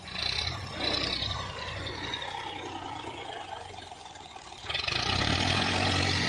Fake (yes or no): yes